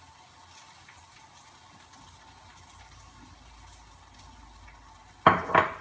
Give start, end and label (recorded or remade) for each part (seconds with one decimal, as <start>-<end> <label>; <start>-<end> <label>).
0.0-5.8 recorded

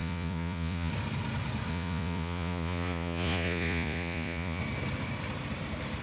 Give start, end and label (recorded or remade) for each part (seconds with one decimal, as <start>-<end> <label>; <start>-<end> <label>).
0.0-0.9 remade; 0.9-1.7 recorded; 1.7-4.6 remade; 4.6-6.0 recorded

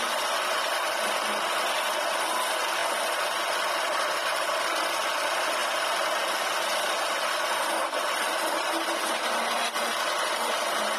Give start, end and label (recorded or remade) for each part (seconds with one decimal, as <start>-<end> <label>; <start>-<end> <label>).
0.0-11.0 recorded